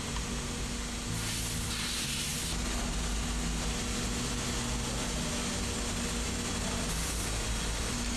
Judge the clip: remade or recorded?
recorded